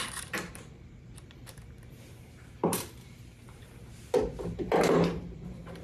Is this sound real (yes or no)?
no